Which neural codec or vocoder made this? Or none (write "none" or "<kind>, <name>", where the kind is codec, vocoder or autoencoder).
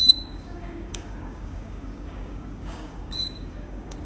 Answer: codec, DAC